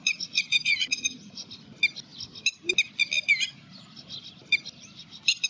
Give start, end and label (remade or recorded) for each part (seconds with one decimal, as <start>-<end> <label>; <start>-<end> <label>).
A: 0.0-1.5 remade; 1.5-5.5 recorded